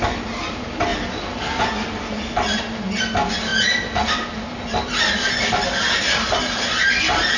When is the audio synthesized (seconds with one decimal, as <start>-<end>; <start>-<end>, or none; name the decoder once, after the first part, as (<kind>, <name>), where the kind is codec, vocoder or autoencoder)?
none